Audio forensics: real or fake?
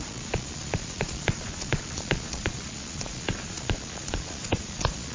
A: fake